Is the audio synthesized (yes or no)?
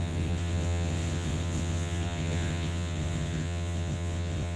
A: yes